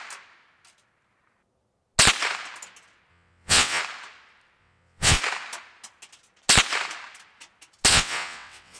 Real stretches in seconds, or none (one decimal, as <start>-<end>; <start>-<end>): 0.0-3.1; 3.8-4.6; 5.2-7.9